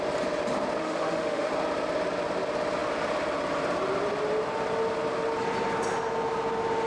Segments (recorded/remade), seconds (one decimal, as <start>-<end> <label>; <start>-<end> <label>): 0.0-0.8 recorded; 0.8-1.5 remade; 1.5-6.9 recorded